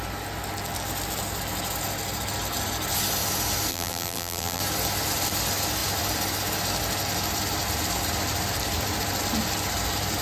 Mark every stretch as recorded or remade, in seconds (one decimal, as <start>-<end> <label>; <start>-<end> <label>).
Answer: 0.0-3.7 recorded; 3.7-4.6 remade; 4.6-10.2 recorded